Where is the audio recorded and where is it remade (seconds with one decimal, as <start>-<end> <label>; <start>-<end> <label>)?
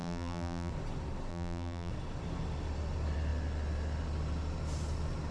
0.0-0.7 remade; 0.7-1.3 recorded; 1.3-1.9 remade; 1.9-5.3 recorded